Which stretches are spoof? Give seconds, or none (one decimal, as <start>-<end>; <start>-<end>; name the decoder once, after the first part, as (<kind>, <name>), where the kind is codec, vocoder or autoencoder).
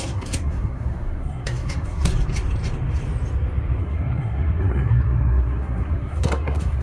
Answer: 0.0-2.1 (codec, SNAC); 3.8-6.8